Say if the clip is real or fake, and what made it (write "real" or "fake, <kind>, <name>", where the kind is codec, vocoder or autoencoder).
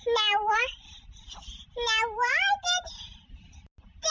real